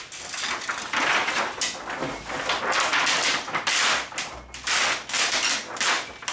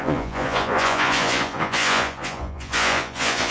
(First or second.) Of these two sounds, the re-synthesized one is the second